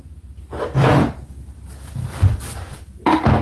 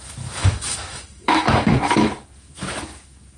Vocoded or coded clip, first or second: second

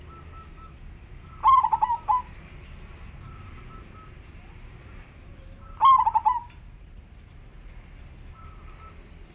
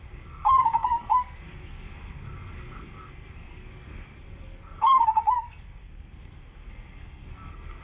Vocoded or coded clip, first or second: second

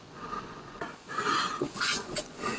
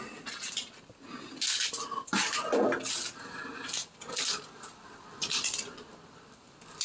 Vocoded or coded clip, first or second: first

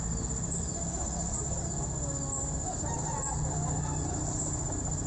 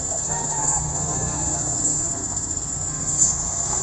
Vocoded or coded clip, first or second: second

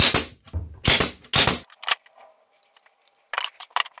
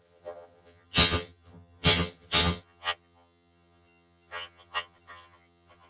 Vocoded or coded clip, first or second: second